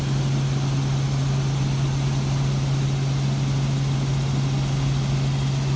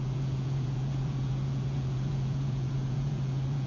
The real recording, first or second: first